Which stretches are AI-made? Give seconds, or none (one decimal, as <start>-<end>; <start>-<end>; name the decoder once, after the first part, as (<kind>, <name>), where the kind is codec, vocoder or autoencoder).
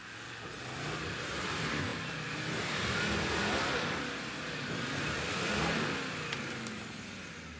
none